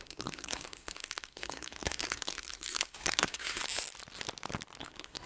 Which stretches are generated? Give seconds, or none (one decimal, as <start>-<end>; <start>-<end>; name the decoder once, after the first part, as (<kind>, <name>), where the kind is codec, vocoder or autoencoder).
0.0-3.6 (codec, SNAC); 4.8-5.3

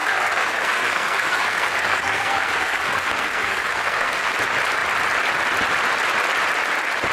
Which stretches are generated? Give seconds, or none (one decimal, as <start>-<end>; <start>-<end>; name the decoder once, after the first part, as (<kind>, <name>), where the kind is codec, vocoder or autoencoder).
0.0-4.3 (codec, SNAC)

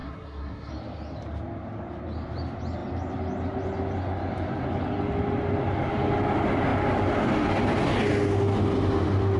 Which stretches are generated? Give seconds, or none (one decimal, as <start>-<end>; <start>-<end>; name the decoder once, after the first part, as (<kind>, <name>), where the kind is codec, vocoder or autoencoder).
0.0-0.7 (codec, SNAC)

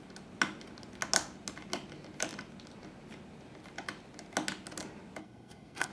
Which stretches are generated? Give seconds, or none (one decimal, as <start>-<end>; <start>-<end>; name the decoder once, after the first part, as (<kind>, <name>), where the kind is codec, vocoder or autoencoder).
5.2-5.9 (codec, SNAC)

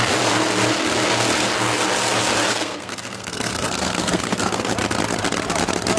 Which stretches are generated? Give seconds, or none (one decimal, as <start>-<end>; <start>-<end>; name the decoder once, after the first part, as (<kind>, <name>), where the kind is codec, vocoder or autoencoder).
2.5-4.7 (codec, SNAC)

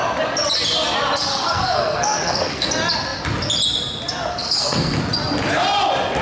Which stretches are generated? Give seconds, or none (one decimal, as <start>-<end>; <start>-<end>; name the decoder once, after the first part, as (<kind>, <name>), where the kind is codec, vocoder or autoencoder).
1.3-2.7 (codec, SNAC); 4.3-5.0

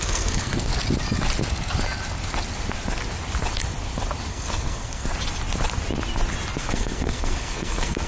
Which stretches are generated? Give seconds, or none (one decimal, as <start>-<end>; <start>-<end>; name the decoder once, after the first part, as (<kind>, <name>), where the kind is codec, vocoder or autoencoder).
0.0-0.7 (codec, SNAC); 4.3-5.1; 6.6-8.1

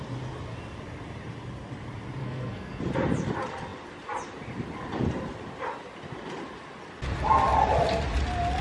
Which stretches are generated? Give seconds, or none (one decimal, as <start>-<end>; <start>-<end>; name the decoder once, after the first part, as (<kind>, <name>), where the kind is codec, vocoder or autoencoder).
2.2-2.8 (codec, SNAC)